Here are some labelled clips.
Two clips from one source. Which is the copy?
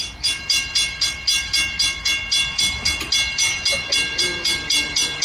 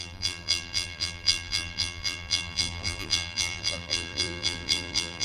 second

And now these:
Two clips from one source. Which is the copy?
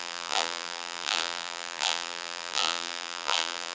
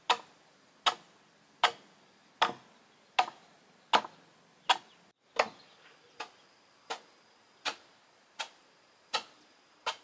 first